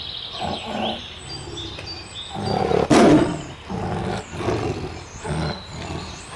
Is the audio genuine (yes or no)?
yes